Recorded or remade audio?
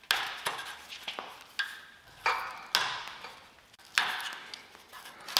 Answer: recorded